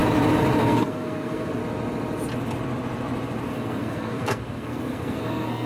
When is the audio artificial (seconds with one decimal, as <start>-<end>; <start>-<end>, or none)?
0.6-1.6; 3.5-5.7